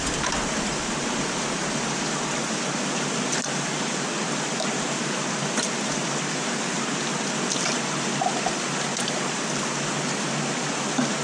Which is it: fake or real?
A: real